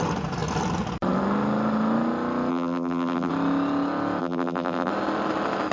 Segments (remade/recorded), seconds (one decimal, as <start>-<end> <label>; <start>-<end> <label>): 0.0-2.5 recorded; 2.5-3.3 remade; 3.3-4.2 recorded; 4.2-4.9 remade; 4.9-5.7 recorded

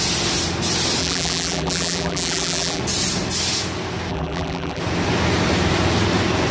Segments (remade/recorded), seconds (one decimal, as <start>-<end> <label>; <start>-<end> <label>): 0.0-1.0 recorded; 1.0-2.8 remade; 2.8-4.1 recorded; 4.1-4.8 remade; 4.8-6.5 recorded

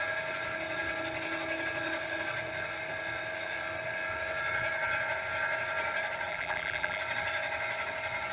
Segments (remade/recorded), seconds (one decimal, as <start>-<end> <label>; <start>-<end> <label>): 0.0-6.3 recorded; 6.3-7.0 remade; 7.0-8.3 recorded

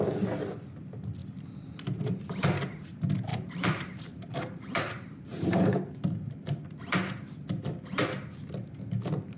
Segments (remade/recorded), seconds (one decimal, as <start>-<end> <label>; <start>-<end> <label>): 0.0-3.3 recorded; 3.3-5.7 remade; 5.7-9.4 recorded

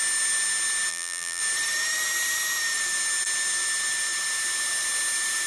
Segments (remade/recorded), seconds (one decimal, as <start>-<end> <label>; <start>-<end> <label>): 0.0-0.9 recorded; 0.9-1.4 remade; 1.4-5.5 recorded

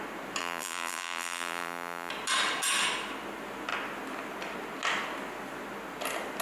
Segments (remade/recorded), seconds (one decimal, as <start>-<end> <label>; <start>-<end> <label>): 0.0-0.4 recorded; 0.4-2.1 remade; 2.1-6.4 recorded